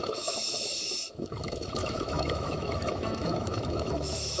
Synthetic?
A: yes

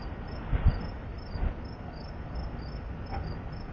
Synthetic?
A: no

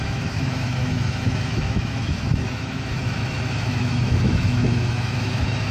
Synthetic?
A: yes